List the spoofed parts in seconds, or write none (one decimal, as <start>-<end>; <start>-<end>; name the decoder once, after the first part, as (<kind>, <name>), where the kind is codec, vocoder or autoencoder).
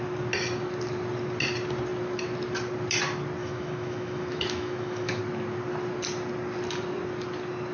3.4-5.2 (autoencoder, DAC-VAE)